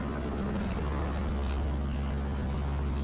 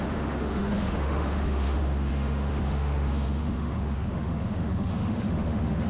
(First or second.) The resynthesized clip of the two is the second